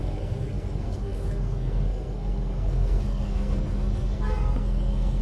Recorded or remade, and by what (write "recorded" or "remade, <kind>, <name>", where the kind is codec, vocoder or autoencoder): remade, codec, SNAC